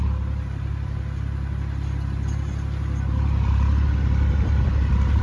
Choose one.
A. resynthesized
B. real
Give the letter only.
B